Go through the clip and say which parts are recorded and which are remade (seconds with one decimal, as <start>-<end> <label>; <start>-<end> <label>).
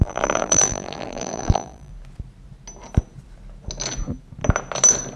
0.0-1.9 remade; 1.9-5.2 recorded